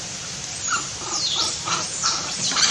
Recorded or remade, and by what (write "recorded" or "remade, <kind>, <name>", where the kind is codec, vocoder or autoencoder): remade, vocoder, BigVGAN v2